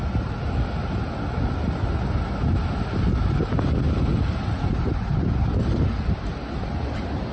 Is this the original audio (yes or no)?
yes